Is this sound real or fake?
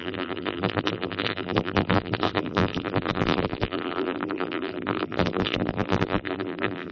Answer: fake